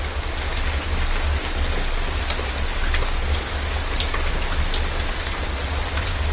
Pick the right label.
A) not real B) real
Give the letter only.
B